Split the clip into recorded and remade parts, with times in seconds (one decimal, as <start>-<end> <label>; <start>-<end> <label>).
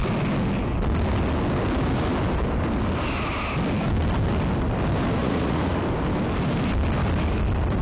0.0-5.2 recorded; 5.2-5.8 remade; 5.8-7.8 recorded